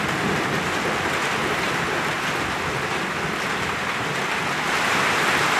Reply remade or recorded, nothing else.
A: recorded